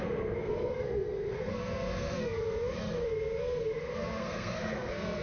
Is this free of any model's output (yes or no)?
no